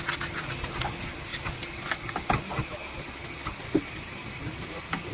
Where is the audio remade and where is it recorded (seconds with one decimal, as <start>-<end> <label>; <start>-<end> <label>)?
0.0-5.1 recorded